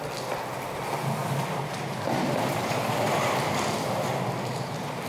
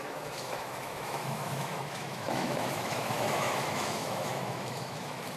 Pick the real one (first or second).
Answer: first